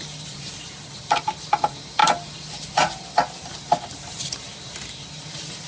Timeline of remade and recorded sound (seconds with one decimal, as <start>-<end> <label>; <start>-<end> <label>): 0.0-5.7 remade